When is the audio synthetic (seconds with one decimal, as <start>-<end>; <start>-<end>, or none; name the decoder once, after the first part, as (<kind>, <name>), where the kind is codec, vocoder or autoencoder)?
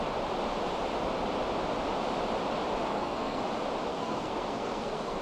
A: 2.9-3.4 (codec, SNAC); 3.9-5.2